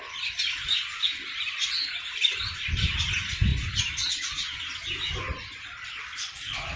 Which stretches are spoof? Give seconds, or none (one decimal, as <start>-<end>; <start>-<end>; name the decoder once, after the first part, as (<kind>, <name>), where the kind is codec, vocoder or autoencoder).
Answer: none